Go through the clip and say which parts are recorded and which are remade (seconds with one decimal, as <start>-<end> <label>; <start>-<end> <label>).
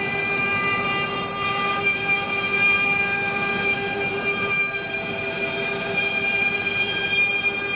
0.0-7.8 remade